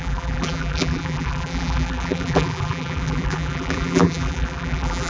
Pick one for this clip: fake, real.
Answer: fake